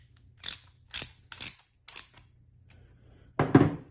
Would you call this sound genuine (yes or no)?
yes